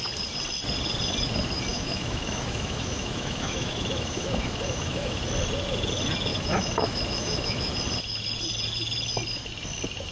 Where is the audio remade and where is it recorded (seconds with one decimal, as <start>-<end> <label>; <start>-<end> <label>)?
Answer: 0.0-1.7 recorded; 1.7-5.2 remade; 5.2-6.3 recorded; 6.3-7.7 remade; 7.7-10.1 recorded